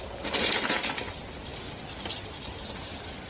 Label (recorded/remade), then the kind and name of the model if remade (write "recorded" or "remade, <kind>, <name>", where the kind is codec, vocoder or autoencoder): recorded